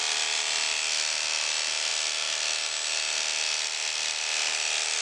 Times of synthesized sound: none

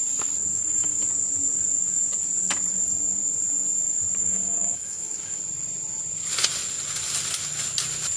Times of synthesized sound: 0.5-1.0 (autoencoder, DAC-VAE); 4.2-5.4